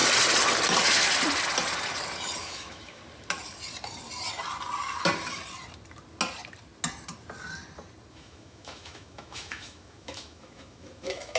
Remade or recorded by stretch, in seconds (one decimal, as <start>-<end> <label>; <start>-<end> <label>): 0.0-2.4 recorded; 2.4-3.0 remade; 3.0-8.1 recorded; 8.1-11.4 remade